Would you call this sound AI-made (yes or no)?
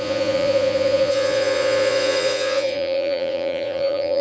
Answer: yes